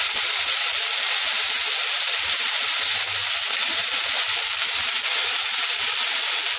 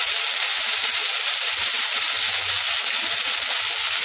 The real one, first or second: second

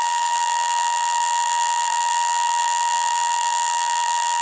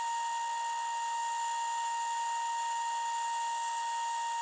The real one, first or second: second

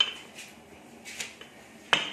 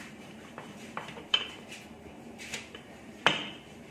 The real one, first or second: first